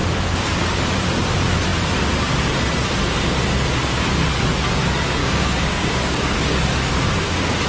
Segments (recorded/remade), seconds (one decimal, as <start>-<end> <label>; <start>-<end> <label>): 0.0-5.2 recorded; 5.2-6.6 remade; 6.6-7.7 recorded